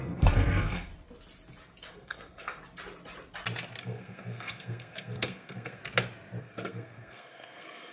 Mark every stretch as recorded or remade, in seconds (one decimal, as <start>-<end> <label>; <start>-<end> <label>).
0.0-0.9 remade; 0.9-1.9 recorded; 1.9-2.6 remade; 2.6-3.8 recorded; 3.8-5.8 remade; 5.8-6.4 recorded; 6.4-7.9 remade